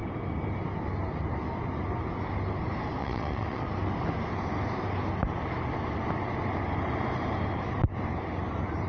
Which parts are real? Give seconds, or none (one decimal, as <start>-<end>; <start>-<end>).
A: 0.0-3.0; 3.6-8.9